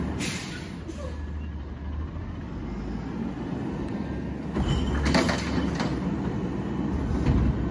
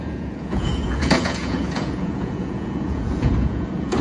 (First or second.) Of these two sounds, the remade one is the second